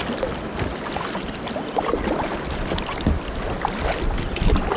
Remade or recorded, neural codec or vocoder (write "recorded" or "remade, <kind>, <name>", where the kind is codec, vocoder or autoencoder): recorded